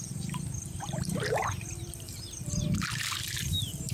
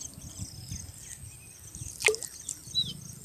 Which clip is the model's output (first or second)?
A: first